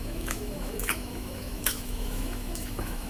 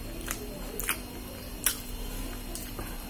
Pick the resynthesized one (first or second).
first